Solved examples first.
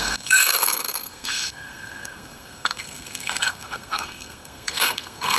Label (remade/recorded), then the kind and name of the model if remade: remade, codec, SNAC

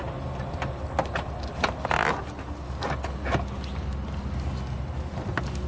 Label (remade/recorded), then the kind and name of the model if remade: recorded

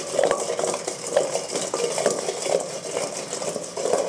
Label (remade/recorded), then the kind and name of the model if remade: recorded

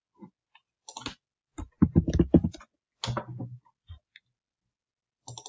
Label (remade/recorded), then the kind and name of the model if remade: recorded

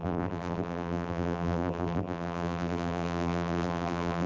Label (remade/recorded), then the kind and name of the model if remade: remade, vocoder, BigVGAN v2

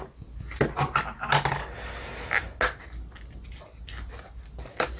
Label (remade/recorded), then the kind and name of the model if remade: recorded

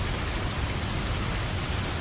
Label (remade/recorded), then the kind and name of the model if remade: recorded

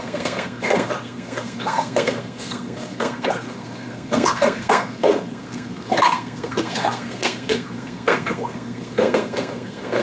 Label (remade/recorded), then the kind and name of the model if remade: remade, codec, SNAC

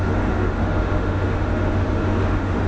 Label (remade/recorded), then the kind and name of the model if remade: remade, autoencoder, DAC-VAE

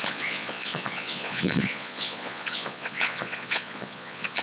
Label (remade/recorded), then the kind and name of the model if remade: remade, vocoder, Vocos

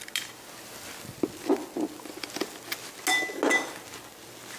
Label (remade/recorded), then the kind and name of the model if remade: recorded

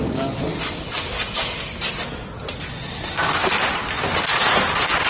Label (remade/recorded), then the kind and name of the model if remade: recorded